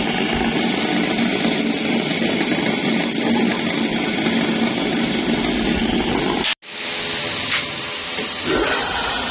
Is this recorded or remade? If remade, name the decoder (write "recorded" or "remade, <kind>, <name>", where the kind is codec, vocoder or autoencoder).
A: recorded